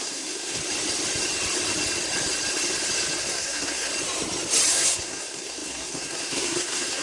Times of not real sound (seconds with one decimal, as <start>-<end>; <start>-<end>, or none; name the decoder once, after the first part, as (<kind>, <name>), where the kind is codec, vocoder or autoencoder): 0.0-0.6 (codec, SNAC); 3.2-3.9; 4.7-7.0